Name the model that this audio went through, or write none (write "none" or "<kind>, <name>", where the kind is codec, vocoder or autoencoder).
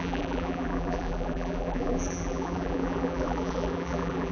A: vocoder, BigVGAN v2